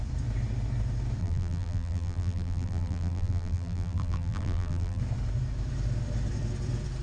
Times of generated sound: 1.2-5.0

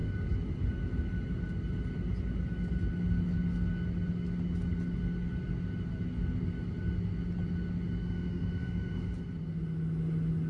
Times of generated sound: 8.0-9.1

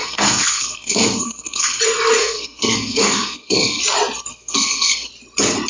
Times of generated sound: 0.0-1.8; 2.2-3.8; 4.3-5.1